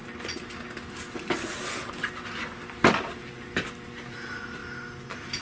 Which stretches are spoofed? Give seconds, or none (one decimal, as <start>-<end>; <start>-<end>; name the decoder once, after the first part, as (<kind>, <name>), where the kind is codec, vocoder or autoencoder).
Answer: none